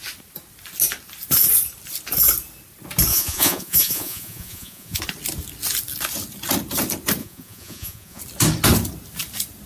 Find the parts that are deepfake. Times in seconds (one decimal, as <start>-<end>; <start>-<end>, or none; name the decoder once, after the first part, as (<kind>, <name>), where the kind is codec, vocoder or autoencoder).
3.1-5.0 (vocoder, Vocos); 7.2-8.2